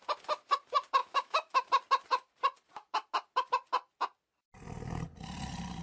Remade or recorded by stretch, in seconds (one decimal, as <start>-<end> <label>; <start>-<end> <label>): 0.0-1.0 recorded; 1.0-1.7 remade; 1.7-5.8 recorded